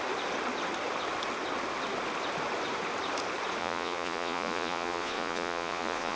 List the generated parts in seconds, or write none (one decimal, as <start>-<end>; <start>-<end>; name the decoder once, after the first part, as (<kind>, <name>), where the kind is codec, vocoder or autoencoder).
3.6-6.2 (vocoder, Vocos)